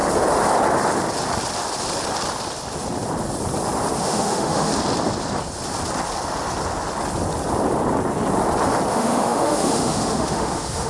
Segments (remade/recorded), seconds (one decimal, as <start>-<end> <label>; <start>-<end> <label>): 0.0-4.0 recorded; 4.0-4.7 remade; 4.7-8.9 recorded; 8.9-10.9 remade